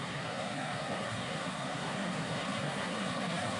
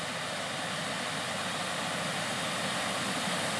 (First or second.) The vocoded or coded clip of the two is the first